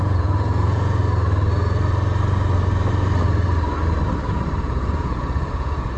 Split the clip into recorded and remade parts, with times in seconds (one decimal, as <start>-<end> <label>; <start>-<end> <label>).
0.0-1.0 remade; 1.0-4.6 recorded; 4.6-6.0 remade